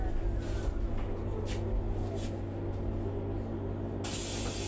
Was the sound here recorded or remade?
recorded